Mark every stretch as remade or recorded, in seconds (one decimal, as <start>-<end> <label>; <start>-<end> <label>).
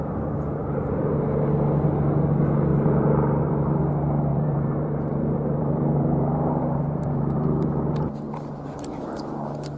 0.0-0.6 recorded; 0.6-1.1 remade; 1.1-2.7 recorded; 2.7-3.8 remade; 3.8-4.3 recorded; 4.3-9.0 remade; 9.0-9.8 recorded